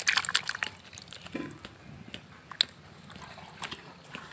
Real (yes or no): yes